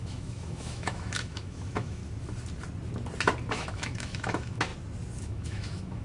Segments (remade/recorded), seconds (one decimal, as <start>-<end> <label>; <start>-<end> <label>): 0.0-2.0 remade; 2.0-3.5 recorded; 3.5-4.7 remade; 4.7-5.2 recorded; 5.2-6.0 remade